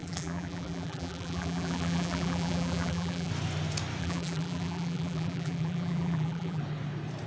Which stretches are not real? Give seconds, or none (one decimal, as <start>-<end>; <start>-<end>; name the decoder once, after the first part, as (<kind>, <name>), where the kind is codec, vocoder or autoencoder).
0.0-3.3 (vocoder, BigVGAN v2); 4.0-6.6